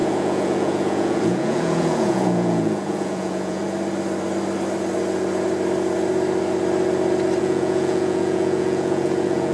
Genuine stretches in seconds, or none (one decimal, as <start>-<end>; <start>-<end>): 3.6-7.4